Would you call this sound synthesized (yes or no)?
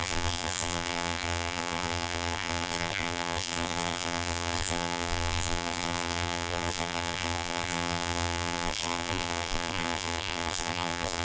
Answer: yes